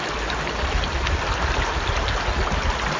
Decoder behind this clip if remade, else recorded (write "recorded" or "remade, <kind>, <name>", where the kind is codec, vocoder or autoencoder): recorded